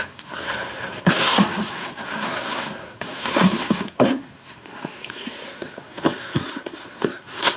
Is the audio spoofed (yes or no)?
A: yes